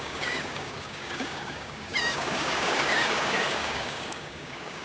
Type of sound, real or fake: fake